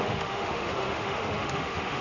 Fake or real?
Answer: fake